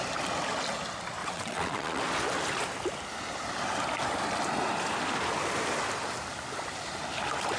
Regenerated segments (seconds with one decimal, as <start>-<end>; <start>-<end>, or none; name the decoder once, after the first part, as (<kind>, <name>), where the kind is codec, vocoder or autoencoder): 1.2-2.0 (vocoder, WaveNeXt)